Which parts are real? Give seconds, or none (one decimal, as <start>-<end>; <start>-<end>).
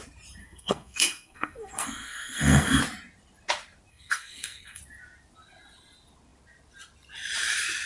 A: 0.0-0.4; 2.8-3.9; 4.8-7.9